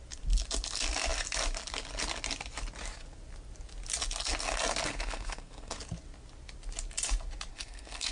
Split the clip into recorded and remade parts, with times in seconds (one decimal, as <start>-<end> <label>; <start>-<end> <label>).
0.0-4.9 recorded; 4.9-5.8 remade; 5.8-7.5 recorded; 7.5-8.1 remade

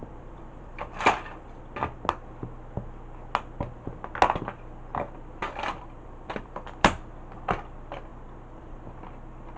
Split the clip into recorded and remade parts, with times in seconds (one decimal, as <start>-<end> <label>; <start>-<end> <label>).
0.0-1.6 remade; 1.6-5.4 recorded; 5.4-6.9 remade; 6.9-9.6 recorded

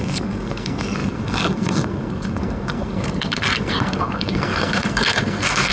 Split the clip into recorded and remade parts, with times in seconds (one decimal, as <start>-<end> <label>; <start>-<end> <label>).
0.0-5.7 remade